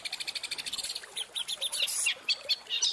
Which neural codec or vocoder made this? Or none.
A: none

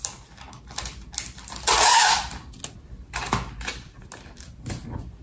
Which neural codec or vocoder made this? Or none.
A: none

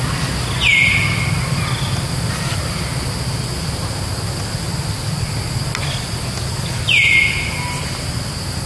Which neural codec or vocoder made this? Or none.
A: none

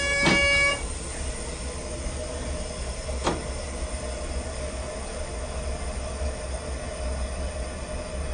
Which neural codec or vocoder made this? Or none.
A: none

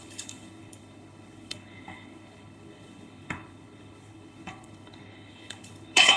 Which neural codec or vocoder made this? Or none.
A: codec, HILCodec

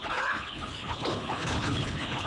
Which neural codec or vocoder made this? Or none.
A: codec, HILCodec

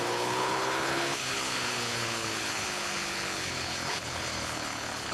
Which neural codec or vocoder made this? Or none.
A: codec, HILCodec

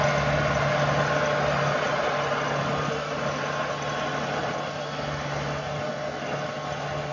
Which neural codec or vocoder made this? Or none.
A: none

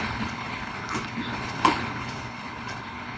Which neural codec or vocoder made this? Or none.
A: codec, HILCodec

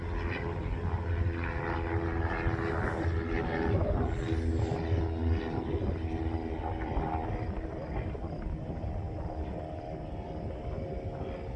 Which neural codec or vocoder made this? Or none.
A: none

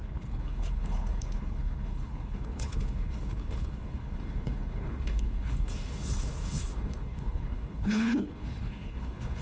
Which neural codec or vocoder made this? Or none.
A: codec, HILCodec